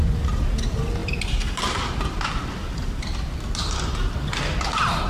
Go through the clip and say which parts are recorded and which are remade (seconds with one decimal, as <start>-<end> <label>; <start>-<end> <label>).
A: 0.0-5.1 recorded